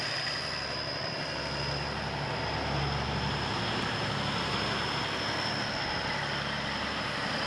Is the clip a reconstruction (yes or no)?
no